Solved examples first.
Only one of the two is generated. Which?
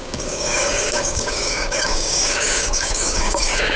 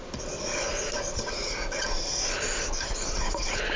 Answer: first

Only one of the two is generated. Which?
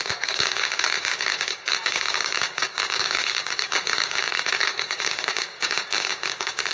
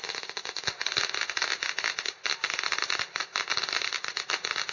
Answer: first